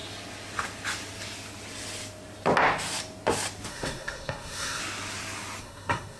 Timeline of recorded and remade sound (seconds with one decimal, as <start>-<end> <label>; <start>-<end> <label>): 0.0-3.7 recorded; 3.7-4.8 remade; 4.8-5.6 recorded; 5.6-6.2 remade